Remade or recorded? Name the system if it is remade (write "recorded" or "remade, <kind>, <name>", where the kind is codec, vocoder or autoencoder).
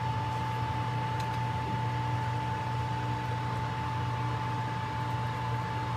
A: recorded